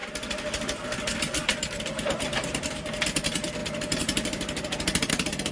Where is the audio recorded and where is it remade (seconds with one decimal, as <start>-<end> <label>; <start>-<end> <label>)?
0.0-5.5 remade